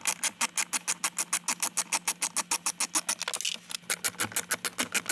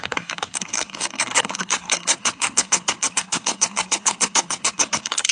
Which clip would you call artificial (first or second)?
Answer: second